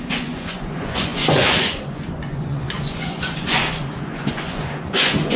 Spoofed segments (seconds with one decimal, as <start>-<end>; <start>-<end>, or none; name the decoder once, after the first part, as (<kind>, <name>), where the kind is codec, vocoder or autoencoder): 0.0-5.4 (vocoder, Vocos)